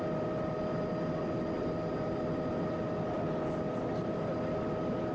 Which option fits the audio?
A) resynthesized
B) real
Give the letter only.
B